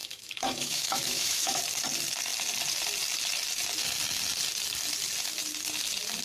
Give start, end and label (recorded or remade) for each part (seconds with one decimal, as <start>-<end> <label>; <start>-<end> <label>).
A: 0.0-1.6 remade; 1.6-6.2 recorded